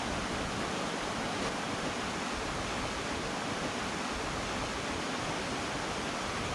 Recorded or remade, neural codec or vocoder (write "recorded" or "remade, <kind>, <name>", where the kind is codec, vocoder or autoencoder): recorded